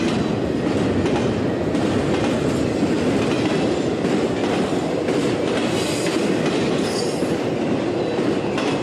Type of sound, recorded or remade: recorded